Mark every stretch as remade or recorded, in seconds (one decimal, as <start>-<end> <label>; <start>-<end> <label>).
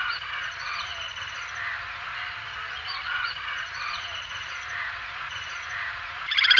0.0-0.9 remade; 0.9-2.8 recorded; 2.8-6.6 remade